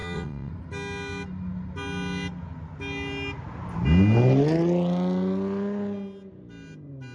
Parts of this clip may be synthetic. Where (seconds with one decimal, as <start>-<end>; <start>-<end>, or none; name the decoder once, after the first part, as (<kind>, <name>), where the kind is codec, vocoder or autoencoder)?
0.0-0.5 (vocoder, WaveNeXt)